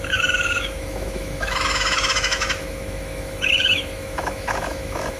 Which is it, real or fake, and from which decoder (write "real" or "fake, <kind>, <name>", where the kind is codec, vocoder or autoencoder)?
fake, autoencoder, DAC-VAE